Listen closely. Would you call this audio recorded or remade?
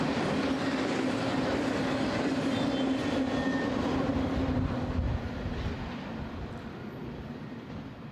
recorded